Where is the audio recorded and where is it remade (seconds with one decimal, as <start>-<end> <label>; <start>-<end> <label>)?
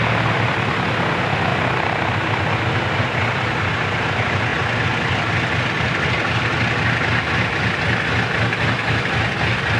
0.0-9.8 recorded